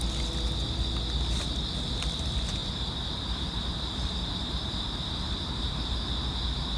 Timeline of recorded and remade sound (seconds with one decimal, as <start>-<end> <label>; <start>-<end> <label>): 0.0-2.6 recorded; 2.6-6.1 remade; 6.1-6.8 recorded